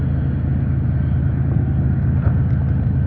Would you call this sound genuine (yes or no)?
yes